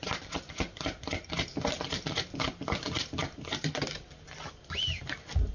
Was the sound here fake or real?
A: real